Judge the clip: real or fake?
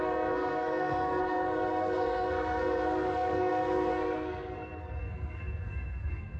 fake